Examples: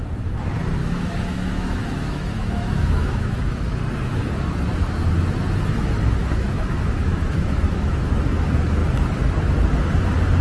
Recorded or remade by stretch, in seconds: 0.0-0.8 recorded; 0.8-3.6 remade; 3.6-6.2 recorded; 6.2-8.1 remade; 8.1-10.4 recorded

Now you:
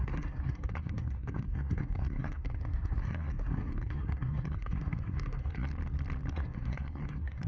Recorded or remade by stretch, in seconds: 0.0-5.7 remade; 5.7-6.3 recorded; 6.3-7.5 remade

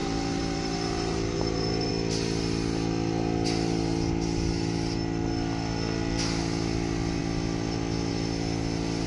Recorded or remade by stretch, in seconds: 0.0-1.9 remade; 1.9-9.1 recorded